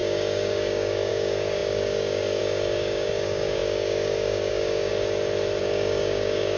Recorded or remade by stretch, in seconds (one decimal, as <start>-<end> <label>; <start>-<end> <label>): 0.0-4.9 remade; 4.9-5.6 recorded; 5.6-6.6 remade